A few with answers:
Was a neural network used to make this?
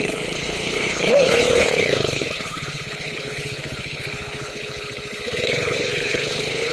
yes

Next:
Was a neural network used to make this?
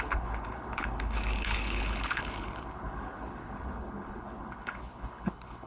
yes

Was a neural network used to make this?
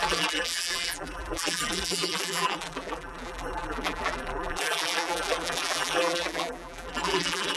yes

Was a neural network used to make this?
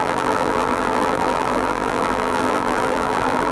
yes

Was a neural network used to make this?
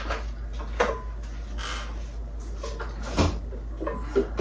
no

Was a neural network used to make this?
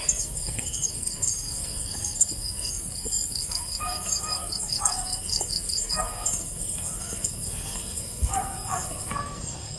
yes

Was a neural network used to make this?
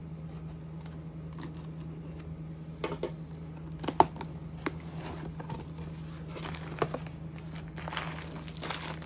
no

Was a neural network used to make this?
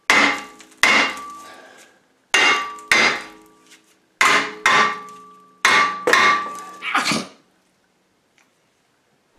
no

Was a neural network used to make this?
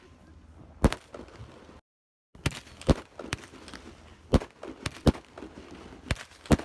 no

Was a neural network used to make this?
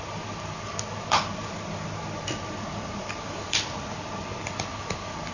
no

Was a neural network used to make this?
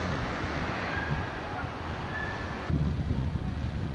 yes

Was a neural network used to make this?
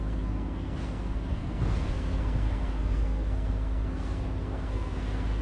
yes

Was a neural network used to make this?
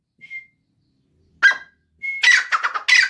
no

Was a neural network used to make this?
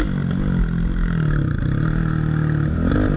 no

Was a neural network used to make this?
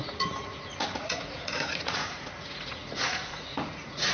yes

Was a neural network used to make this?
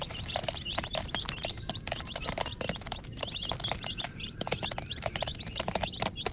yes